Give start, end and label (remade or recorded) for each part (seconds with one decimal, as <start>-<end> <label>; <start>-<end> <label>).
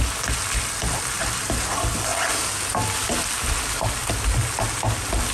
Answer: 0.0-5.3 recorded